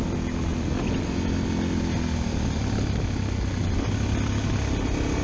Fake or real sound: real